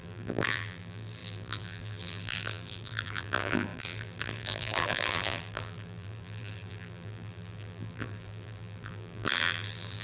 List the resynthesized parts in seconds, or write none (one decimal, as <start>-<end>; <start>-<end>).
0.0-10.0